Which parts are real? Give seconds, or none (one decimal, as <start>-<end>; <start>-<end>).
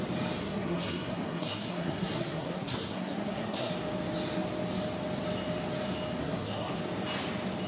0.0-0.4; 3.7-6.2; 6.8-7.7